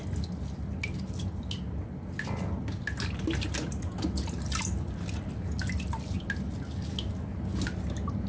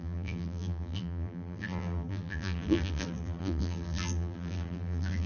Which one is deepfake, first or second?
second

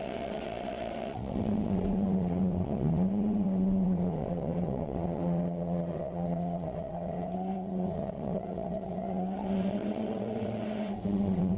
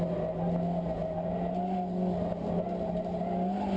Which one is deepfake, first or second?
first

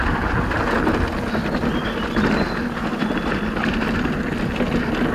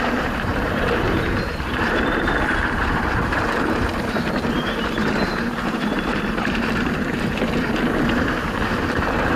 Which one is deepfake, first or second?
second